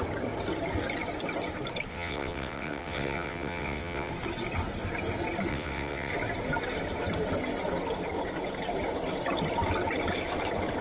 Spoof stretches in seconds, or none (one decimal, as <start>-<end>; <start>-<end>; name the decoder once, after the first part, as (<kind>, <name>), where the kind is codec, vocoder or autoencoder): 1.9-4.1 (vocoder, WaveNeXt); 5.5-6.1